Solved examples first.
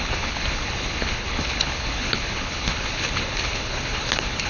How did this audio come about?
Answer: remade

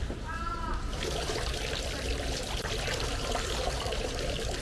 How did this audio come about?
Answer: recorded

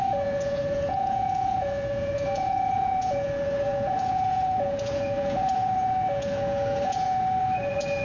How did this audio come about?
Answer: remade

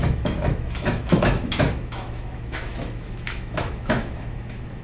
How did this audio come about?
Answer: remade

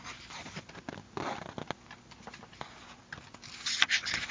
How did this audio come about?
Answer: recorded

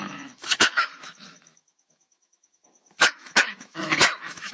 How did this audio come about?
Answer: remade